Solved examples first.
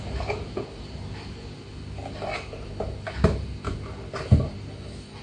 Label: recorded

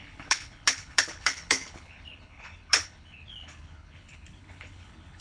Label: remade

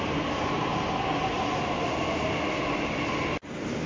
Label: recorded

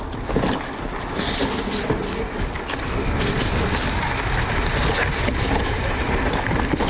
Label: recorded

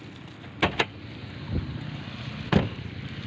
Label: recorded